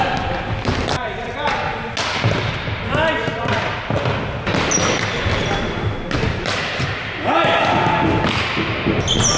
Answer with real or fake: real